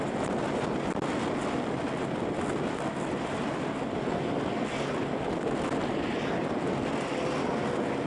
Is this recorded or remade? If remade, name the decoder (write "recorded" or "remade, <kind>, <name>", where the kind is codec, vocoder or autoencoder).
recorded